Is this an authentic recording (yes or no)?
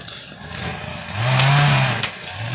yes